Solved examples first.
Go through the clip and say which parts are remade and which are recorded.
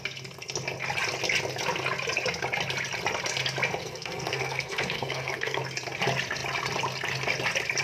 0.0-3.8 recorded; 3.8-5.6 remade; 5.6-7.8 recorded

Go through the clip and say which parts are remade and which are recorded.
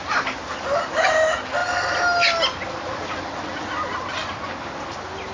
0.0-5.3 recorded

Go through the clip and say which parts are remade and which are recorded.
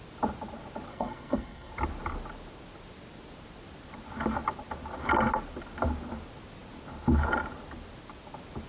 0.0-0.9 recorded; 0.9-1.7 remade; 1.7-8.7 recorded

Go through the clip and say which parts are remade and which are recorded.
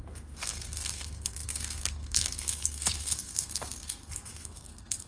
0.0-5.1 remade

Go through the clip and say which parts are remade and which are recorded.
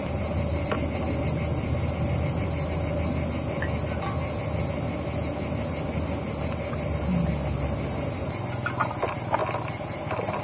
0.0-10.4 recorded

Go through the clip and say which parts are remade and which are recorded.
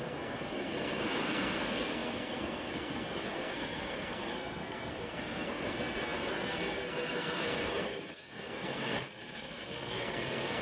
0.0-10.6 remade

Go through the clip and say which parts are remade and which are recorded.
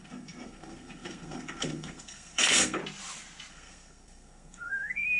0.0-2.8 remade; 2.8-3.5 recorded; 3.5-5.2 remade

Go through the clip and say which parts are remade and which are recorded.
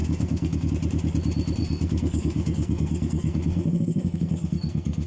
0.0-0.7 remade; 0.7-1.6 recorded; 1.6-5.1 remade